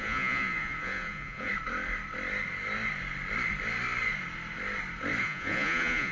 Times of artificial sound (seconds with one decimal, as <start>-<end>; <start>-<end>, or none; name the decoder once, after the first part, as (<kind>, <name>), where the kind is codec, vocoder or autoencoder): 0.0-1.5 (vocoder, Vocos); 5.2-6.1